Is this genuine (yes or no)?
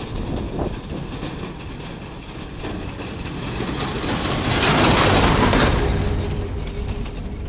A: yes